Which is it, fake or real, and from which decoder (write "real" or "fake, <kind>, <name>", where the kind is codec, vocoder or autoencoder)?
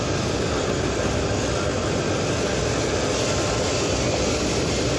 real